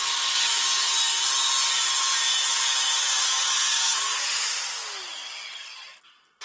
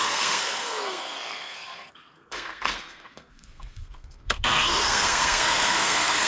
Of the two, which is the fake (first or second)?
second